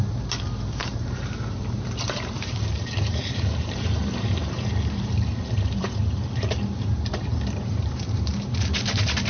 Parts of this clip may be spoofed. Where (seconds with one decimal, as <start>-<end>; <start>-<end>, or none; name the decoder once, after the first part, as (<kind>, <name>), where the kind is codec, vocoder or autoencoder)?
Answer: 0.8-5.9 (vocoder, BigVGAN v2); 7.3-9.3